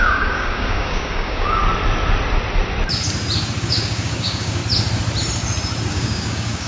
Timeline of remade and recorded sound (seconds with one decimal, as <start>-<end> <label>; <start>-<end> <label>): 0.0-1.6 remade; 1.6-3.6 recorded; 3.6-4.6 remade; 4.6-5.9 recorded; 5.9-6.7 remade